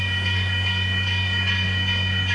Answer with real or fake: fake